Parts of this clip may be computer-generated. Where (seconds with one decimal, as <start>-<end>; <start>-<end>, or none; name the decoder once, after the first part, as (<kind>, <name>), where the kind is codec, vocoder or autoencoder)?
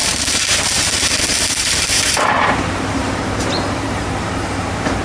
0.0-5.0 (vocoder, BigVGAN v2)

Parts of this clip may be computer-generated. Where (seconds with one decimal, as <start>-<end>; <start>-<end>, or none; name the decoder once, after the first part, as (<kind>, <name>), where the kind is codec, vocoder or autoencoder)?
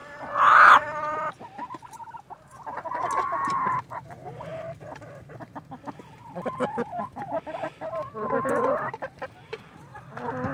0.0-2.0 (vocoder, BigVGAN v2); 3.2-4.5; 5.0-10.5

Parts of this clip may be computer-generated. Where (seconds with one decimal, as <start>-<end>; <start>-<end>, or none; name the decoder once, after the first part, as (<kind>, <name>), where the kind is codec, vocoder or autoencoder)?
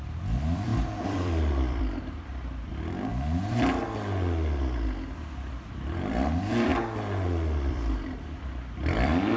0.0-3.1 (vocoder, BigVGAN v2); 5.5-6.7; 7.7-9.4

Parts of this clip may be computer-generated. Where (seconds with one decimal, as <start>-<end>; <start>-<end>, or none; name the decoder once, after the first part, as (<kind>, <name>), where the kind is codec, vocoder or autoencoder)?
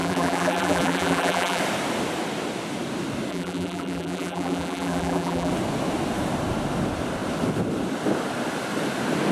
0.0-1.6 (vocoder, BigVGAN v2); 3.3-5.5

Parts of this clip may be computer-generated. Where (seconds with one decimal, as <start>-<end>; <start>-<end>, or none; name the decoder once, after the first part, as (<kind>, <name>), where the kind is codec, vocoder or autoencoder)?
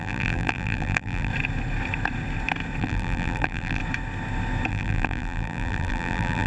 0.0-1.3 (vocoder, BigVGAN v2); 2.8-3.8; 4.7-6.5